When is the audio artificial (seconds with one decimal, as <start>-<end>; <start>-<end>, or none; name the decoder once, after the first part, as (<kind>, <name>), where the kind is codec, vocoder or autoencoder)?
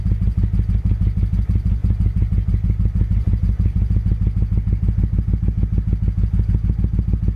none